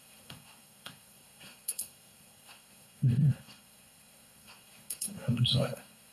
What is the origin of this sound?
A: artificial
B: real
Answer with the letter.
A